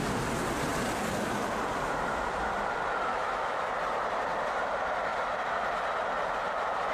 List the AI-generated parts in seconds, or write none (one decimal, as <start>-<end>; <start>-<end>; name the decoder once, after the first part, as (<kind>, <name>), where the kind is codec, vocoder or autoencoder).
3.1-3.7 (autoencoder, DAC-VAE)